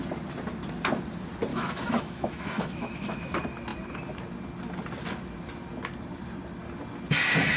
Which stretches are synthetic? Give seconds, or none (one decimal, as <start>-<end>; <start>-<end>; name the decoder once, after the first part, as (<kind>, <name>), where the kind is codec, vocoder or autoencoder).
1.5-3.3 (autoencoder, DAC-VAE)